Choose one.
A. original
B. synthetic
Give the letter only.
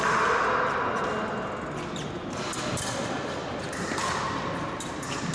A